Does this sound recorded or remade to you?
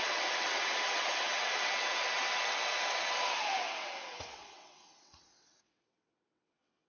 remade